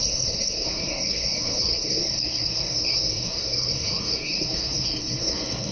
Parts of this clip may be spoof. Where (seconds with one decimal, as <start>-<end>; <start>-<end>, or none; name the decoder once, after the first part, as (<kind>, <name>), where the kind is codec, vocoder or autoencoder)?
0.0-5.7 (codec, SNAC)